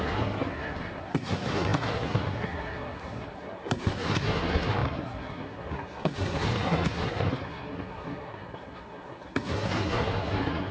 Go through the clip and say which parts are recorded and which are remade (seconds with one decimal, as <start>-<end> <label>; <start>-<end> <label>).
0.0-10.7 remade